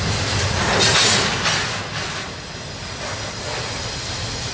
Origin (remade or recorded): recorded